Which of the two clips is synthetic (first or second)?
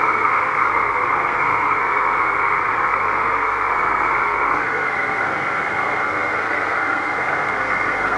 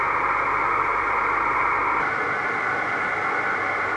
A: first